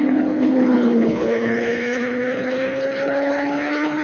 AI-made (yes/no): yes